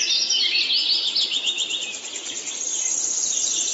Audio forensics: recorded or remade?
recorded